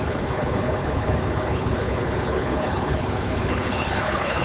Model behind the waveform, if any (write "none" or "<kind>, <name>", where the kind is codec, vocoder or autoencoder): codec, HILCodec